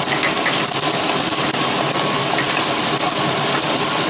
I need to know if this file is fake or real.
real